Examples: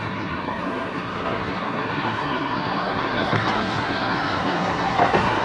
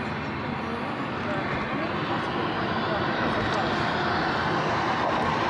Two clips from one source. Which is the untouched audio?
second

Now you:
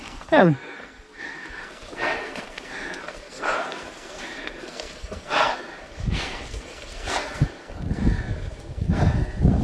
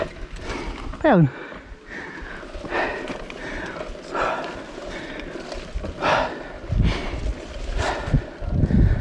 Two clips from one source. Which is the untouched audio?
second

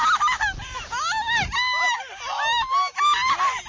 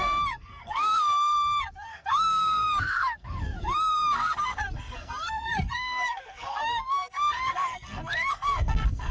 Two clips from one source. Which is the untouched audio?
first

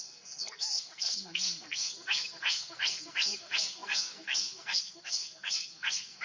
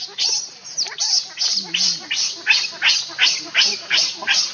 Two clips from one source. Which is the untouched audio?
second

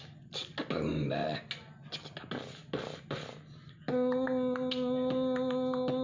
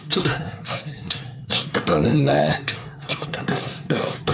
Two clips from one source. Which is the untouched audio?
first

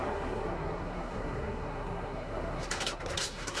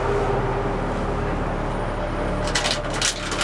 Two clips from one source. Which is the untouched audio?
second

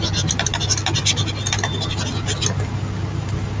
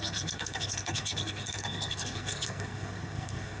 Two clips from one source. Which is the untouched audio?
first